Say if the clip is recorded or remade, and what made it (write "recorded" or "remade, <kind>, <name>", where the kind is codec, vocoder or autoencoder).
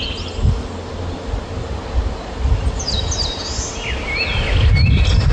recorded